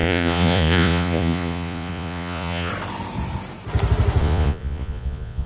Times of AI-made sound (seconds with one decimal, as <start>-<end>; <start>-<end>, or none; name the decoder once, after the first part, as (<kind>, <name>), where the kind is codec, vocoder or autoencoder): 0.0-2.7 (vocoder, Vocos); 4.2-5.5